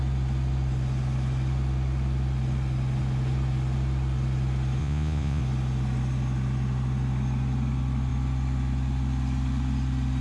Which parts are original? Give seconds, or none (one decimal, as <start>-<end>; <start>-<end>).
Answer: 0.0-4.8; 5.4-10.2